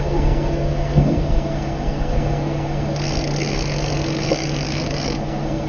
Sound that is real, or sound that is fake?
fake